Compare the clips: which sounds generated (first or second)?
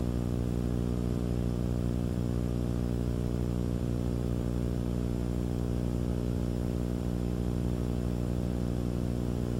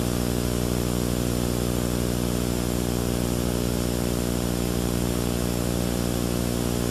first